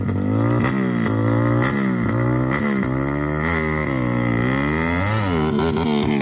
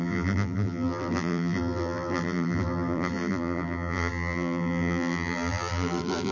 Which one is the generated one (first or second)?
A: second